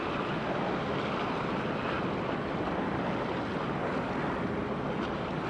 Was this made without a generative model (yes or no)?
yes